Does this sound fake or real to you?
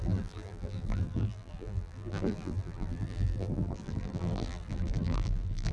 fake